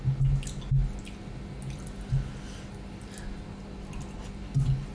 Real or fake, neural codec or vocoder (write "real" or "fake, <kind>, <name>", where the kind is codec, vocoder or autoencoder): real